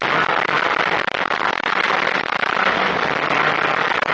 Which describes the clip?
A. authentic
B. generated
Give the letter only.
A